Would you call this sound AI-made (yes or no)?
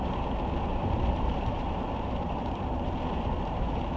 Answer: yes